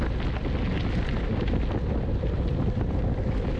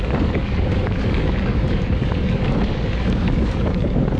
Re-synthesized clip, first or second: second